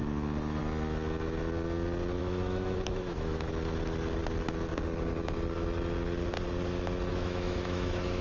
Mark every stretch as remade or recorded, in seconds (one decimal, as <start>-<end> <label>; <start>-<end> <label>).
0.0-2.2 recorded; 2.2-3.5 remade; 3.5-7.1 recorded; 7.1-8.2 remade